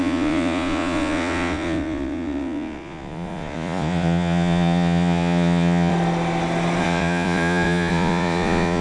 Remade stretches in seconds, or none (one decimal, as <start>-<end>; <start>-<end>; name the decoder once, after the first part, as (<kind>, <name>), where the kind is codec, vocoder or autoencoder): 0.0-5.9 (vocoder, Vocos); 6.8-8.8